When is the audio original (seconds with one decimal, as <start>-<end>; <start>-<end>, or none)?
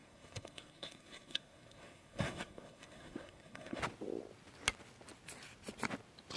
3.8-6.4